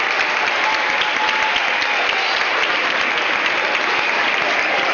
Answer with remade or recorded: recorded